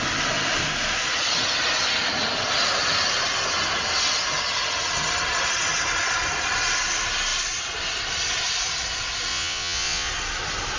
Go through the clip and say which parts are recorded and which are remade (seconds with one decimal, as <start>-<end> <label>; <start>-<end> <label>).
0.0-9.3 recorded; 9.3-10.1 remade; 10.1-10.8 recorded